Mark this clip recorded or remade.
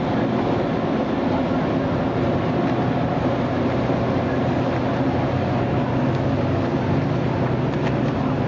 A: recorded